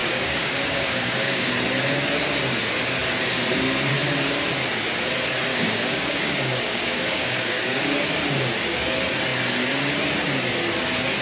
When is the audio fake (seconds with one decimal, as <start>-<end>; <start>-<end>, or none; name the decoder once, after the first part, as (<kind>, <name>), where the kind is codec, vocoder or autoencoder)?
0.0-1.5 (codec, DAC); 5.5-7.8